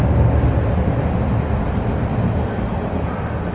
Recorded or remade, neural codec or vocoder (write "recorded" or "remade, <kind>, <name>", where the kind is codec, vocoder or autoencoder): recorded